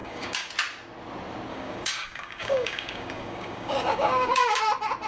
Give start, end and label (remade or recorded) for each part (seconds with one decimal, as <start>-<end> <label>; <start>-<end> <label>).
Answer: 0.0-0.5 remade; 0.5-1.5 recorded; 1.5-4.6 remade; 4.6-5.1 recorded